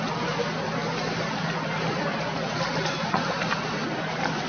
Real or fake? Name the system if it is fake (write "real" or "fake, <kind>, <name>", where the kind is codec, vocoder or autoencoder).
real